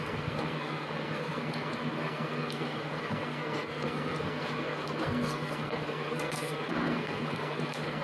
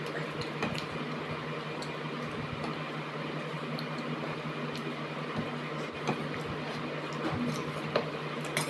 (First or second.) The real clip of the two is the second